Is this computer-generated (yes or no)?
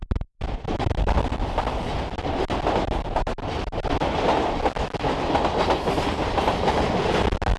no